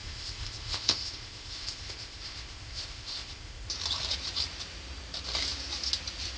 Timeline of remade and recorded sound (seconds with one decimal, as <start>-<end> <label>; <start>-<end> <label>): 0.0-3.7 remade; 3.7-6.4 recorded